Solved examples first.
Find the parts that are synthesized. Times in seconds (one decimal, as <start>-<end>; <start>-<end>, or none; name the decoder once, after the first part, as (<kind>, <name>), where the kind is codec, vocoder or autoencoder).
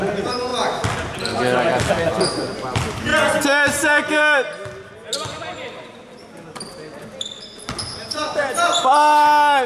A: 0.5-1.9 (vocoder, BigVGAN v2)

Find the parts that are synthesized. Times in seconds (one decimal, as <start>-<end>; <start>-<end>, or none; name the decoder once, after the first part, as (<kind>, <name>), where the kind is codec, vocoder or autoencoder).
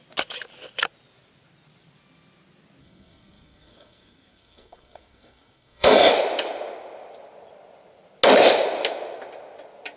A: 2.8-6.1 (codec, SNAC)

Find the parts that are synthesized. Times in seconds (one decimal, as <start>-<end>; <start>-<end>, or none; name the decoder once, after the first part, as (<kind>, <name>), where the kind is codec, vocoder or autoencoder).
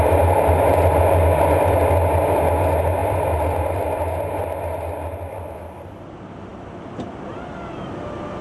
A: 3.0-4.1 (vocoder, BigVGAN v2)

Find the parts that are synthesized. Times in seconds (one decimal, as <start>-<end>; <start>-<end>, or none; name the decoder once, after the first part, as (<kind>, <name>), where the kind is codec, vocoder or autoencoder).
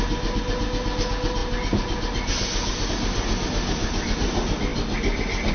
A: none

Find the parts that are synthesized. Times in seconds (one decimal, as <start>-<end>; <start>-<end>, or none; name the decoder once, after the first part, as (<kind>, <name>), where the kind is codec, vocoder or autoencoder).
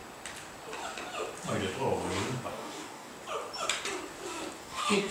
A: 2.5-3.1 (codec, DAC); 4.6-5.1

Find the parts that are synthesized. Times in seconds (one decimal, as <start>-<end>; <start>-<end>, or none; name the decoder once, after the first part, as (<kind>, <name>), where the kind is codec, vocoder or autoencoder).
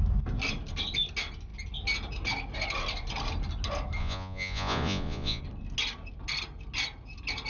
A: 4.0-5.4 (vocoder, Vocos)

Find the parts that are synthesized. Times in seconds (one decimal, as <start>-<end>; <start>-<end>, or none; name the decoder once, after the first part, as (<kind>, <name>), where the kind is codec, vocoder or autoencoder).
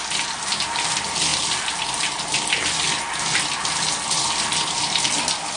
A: none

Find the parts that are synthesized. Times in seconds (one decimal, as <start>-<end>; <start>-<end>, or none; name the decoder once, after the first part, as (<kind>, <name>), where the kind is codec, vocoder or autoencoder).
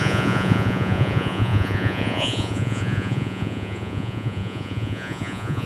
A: 0.0-5.7 (vocoder, Vocos)